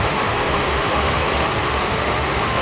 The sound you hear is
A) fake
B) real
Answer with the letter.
A